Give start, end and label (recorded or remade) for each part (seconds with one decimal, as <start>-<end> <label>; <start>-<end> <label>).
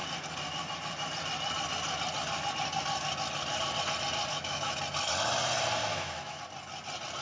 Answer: 0.0-4.3 recorded; 4.3-4.8 remade; 4.8-5.8 recorded; 5.8-6.4 remade; 6.4-7.2 recorded